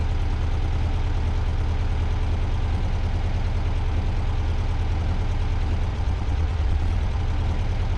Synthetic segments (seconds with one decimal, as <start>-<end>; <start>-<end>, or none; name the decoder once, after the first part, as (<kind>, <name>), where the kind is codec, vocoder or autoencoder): 5.9-7.2 (vocoder, Vocos)